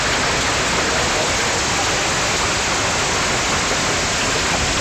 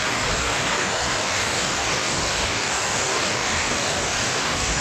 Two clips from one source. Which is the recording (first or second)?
first